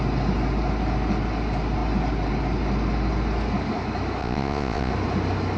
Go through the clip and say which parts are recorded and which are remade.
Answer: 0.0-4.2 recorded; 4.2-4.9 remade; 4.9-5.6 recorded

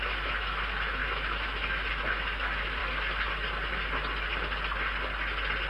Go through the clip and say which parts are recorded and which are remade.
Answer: 0.0-2.8 remade; 2.8-5.7 recorded

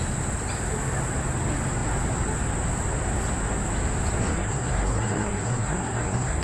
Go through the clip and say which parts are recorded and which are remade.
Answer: 0.0-4.2 recorded; 4.2-6.4 remade

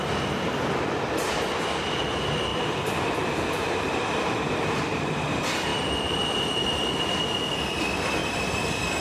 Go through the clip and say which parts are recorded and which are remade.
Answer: 0.0-2.5 recorded; 2.5-4.8 remade; 4.8-5.7 recorded; 5.7-6.7 remade; 6.7-8.2 recorded; 8.2-9.0 remade

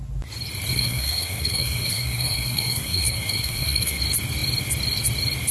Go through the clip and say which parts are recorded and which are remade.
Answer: 0.0-0.7 recorded; 0.7-4.0 remade; 4.0-5.5 recorded